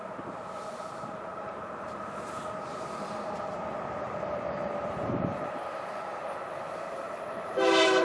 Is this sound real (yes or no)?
no